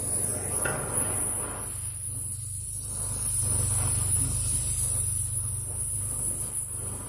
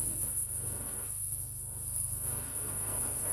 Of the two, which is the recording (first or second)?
first